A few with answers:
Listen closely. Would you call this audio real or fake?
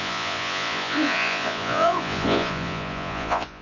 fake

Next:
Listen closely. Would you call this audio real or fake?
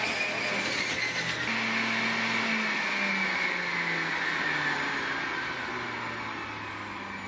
real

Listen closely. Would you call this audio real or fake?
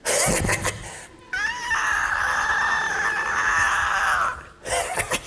real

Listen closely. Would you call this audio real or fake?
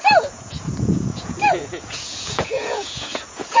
fake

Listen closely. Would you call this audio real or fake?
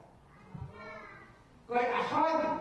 fake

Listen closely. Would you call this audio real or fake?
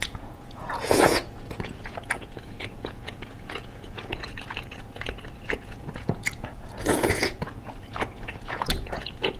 fake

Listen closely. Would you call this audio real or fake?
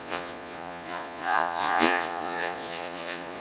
fake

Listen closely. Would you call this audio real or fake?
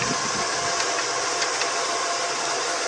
real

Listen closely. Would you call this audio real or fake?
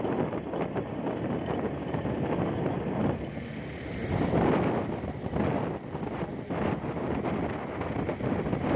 real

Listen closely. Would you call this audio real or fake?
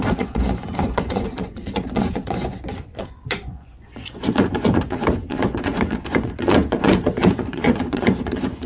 fake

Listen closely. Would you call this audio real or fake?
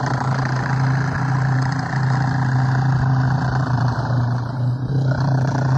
real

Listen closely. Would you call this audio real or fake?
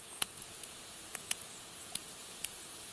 fake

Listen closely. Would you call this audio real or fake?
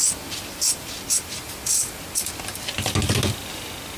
real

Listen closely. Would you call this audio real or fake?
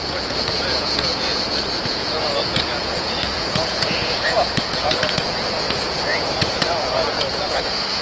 fake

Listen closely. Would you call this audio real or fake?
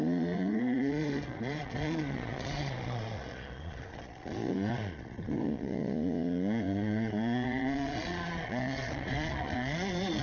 fake